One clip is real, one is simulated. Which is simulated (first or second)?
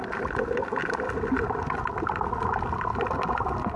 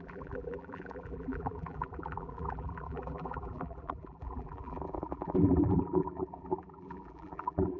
second